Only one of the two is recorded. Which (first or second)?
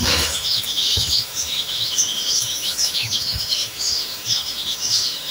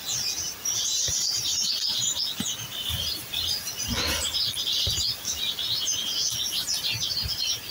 second